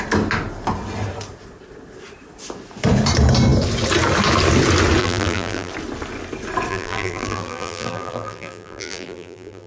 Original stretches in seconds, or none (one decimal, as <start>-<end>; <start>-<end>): 0.0-5.0; 5.7-6.7